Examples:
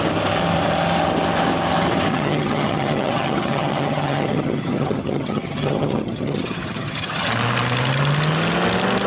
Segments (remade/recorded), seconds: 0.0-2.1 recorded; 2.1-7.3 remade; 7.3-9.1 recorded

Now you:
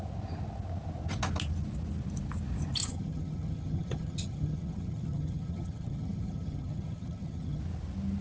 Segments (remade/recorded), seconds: 0.0-2.8 recorded; 2.8-7.6 remade; 7.6-8.2 recorded

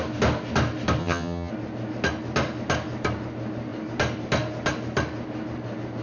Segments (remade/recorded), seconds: 0.0-1.0 recorded; 1.0-1.5 remade; 1.5-6.0 recorded

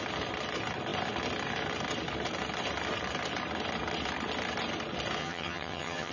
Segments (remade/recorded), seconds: 0.0-5.2 recorded; 5.2-6.1 remade

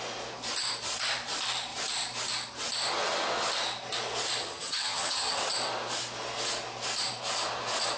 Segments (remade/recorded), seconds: 0.0-4.4 recorded; 4.4-5.4 remade; 5.4-8.0 recorded

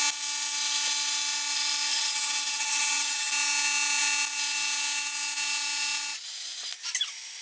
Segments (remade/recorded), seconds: 0.0-1.9 recorded; 1.9-3.3 remade; 3.3-7.4 recorded

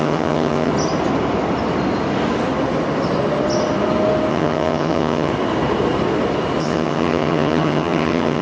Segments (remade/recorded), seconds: 0.0-0.7 remade; 0.7-4.3 recorded; 4.3-5.3 remade; 5.3-6.6 recorded; 6.6-8.4 remade

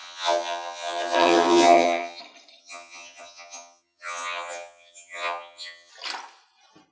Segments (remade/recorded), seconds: 0.0-2.2 remade; 2.2-2.6 recorded; 2.6-5.9 remade; 5.9-6.9 recorded